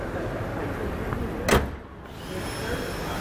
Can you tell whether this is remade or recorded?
recorded